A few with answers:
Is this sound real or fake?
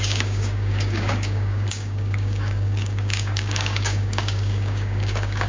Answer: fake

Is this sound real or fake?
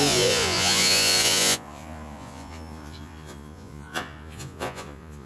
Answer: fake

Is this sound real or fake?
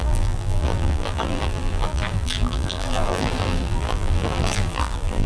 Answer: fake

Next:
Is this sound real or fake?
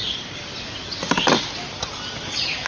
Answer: real